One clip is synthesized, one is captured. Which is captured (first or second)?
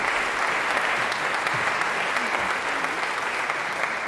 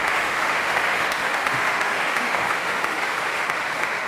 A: first